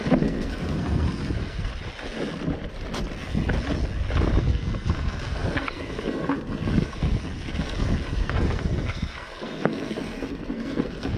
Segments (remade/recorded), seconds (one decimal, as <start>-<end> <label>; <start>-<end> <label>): 0.0-1.7 remade; 1.7-4.4 recorded; 4.4-11.2 remade